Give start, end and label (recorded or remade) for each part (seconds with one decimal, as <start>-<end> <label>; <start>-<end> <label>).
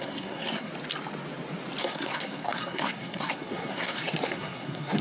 0.0-0.7 remade; 0.7-1.8 recorded; 1.8-5.0 remade